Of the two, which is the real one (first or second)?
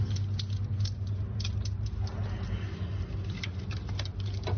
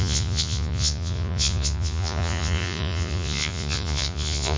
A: first